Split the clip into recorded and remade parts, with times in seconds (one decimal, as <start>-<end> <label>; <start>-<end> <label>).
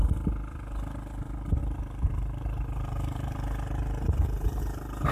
0.0-1.6 recorded; 1.6-4.6 remade; 4.6-5.1 recorded